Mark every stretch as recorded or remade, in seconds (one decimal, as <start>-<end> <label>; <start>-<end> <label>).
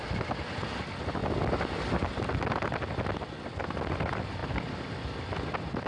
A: 0.0-5.9 recorded